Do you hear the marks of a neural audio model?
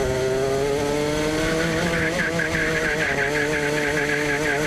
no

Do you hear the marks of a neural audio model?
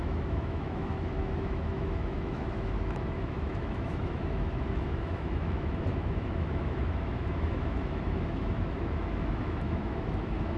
yes